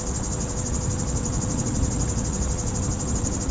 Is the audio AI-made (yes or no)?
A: yes